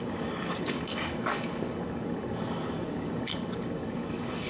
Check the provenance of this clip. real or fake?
fake